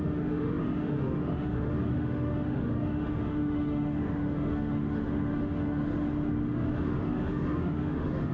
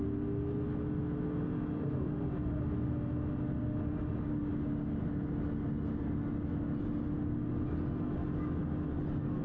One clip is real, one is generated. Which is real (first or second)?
second